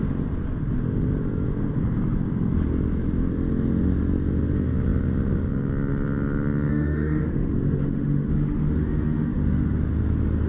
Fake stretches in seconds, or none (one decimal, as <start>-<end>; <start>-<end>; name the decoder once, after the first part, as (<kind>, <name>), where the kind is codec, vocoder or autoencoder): 6.7-9.8 (autoencoder, DAC-VAE)